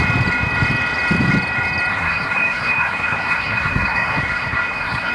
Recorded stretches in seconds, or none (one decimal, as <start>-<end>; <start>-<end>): 0.0-1.9

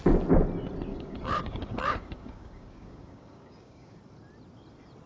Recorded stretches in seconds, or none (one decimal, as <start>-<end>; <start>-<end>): 0.0-0.9; 4.0-5.1

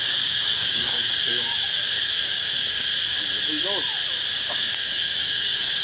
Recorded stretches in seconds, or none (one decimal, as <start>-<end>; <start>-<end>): 2.9-4.5

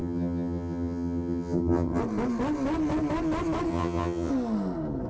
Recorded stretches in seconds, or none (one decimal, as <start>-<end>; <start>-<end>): 2.0-3.7; 4.3-5.1

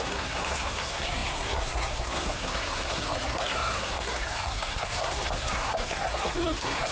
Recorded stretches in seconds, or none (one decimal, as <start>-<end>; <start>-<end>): none

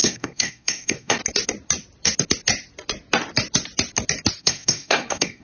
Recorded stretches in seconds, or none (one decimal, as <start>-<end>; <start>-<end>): 1.2-4.4